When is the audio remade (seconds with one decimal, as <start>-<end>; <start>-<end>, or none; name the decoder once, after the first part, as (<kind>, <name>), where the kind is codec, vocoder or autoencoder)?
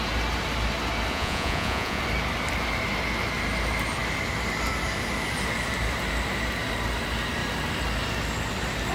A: 1.1-2.0 (vocoder, Vocos)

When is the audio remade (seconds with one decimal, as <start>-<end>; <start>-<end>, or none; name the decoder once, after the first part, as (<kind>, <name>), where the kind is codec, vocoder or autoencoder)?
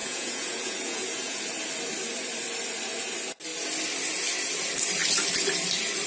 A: 0.0-1.4 (vocoder, Vocos)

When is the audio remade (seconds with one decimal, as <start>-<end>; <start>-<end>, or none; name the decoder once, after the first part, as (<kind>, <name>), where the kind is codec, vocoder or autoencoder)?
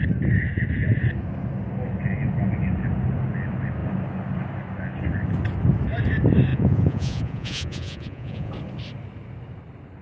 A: 6.5-8.5 (vocoder, Vocos)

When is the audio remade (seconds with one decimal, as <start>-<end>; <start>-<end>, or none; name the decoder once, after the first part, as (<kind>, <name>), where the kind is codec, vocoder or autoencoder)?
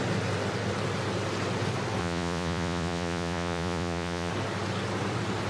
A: 2.0-4.3 (vocoder, Vocos)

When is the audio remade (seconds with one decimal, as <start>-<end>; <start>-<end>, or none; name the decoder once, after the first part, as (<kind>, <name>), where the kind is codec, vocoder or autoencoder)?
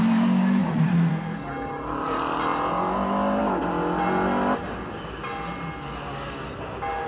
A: 0.6-1.1 (vocoder, Vocos)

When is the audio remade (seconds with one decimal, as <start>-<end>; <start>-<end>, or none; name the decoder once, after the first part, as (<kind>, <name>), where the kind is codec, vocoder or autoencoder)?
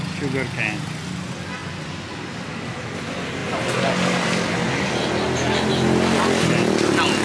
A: none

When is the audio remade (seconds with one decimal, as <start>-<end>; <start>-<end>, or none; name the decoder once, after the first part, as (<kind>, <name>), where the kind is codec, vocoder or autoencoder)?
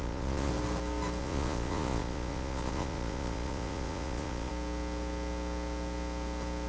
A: 0.0-0.5 (vocoder, Vocos); 1.2-4.5